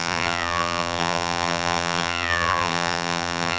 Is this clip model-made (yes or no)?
yes